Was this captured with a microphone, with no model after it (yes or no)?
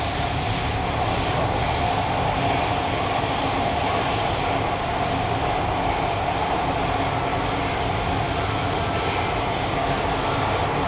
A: yes